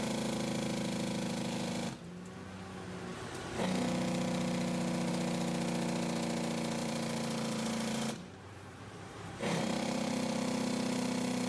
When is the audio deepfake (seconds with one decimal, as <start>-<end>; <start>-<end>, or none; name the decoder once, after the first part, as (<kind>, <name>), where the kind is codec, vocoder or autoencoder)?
6.8-10.1 (vocoder, BigVGAN v2)